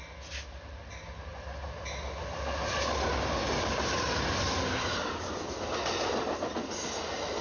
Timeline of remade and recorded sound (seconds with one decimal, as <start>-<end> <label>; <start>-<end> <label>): 0.0-7.4 recorded